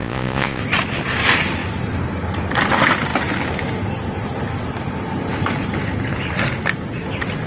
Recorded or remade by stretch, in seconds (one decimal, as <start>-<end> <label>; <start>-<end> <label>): 0.0-0.6 remade; 0.6-7.5 recorded